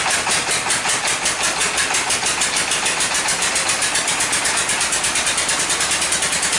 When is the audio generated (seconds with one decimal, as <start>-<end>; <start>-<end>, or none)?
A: none